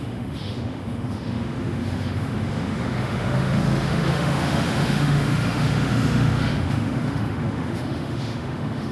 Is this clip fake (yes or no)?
yes